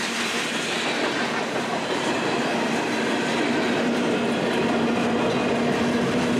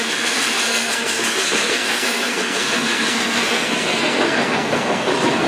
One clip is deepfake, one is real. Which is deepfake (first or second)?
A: second